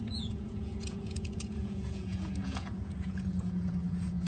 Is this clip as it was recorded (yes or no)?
no